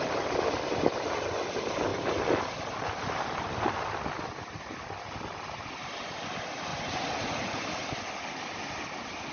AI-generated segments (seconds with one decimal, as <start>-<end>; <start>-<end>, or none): 6.7-7.6